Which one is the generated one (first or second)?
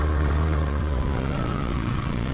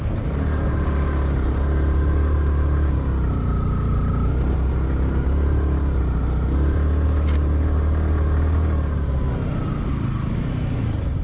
first